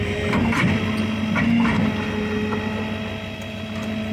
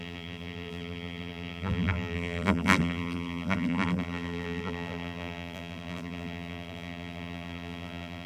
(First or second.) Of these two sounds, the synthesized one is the second